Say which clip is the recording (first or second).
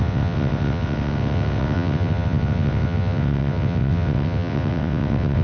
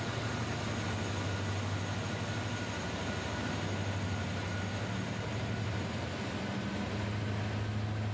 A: second